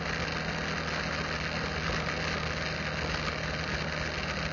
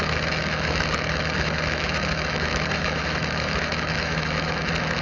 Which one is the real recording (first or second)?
first